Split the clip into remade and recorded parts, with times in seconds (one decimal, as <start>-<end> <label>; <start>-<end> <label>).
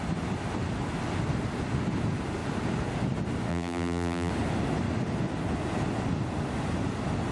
0.0-3.5 recorded; 3.5-4.3 remade; 4.3-7.3 recorded